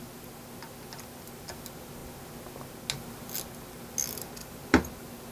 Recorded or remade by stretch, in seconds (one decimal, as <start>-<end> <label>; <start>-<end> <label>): 0.0-4.4 recorded; 4.4-5.3 remade